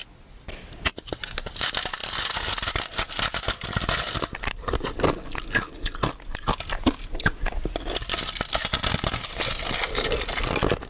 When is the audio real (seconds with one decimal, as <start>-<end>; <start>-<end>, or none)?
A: 0.0-10.9